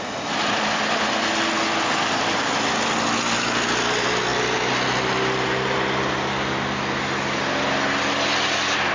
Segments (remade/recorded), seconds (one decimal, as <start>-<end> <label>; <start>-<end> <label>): 0.0-8.9 recorded

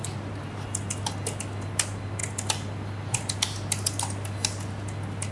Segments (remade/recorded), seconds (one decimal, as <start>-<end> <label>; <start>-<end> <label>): 0.0-5.3 recorded

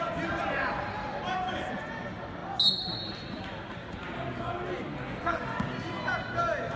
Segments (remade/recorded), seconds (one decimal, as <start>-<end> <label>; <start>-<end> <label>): 0.0-4.9 recorded; 4.9-5.4 remade; 5.4-6.8 recorded

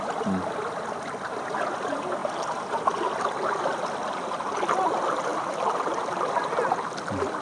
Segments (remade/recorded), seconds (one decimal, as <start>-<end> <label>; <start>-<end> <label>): 0.0-7.4 recorded

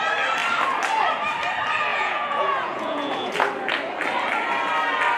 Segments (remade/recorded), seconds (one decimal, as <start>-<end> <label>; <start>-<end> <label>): 0.0-1.9 recorded; 1.9-3.3 remade; 3.3-5.2 recorded